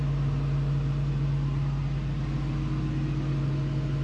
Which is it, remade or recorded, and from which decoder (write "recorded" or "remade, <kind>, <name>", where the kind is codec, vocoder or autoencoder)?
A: recorded